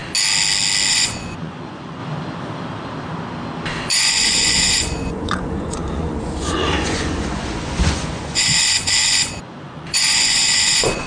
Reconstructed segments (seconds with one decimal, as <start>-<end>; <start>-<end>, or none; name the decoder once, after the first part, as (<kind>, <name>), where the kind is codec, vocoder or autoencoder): 0.9-2.0 (vocoder, Vocos); 3.9-11.1